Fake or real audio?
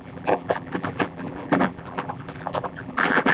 fake